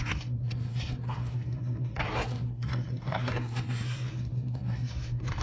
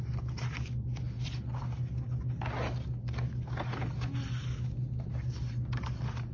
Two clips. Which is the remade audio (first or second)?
first